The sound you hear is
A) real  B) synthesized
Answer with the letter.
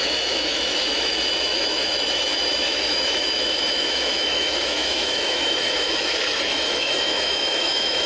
B